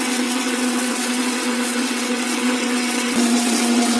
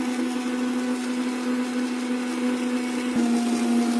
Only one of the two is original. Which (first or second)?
second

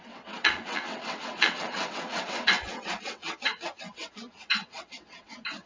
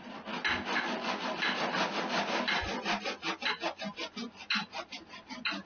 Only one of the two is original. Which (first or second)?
second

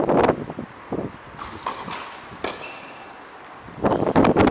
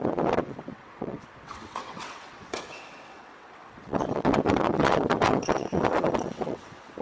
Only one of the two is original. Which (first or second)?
first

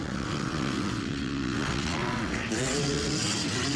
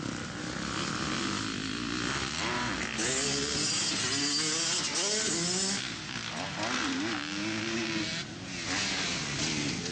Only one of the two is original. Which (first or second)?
second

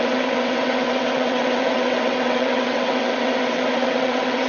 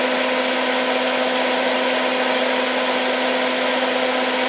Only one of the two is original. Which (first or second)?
second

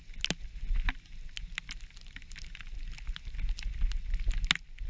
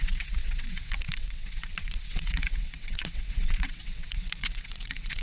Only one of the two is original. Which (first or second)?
first